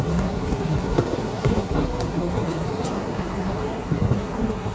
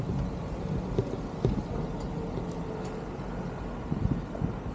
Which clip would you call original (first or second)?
second